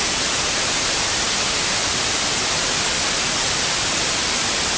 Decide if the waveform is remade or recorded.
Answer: recorded